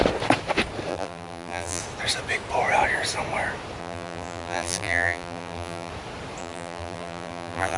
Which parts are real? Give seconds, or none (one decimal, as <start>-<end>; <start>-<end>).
0.0-0.9; 1.8-3.8; 5.9-6.4